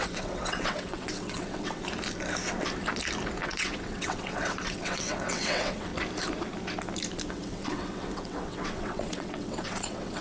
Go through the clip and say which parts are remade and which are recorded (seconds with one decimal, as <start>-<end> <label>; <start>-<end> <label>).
0.0-1.8 remade; 1.8-3.4 recorded; 3.4-5.9 remade; 5.9-7.3 recorded; 7.3-10.2 remade